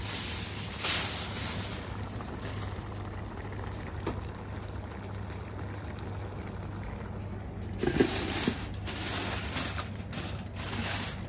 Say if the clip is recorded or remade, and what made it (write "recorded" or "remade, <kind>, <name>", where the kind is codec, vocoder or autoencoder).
recorded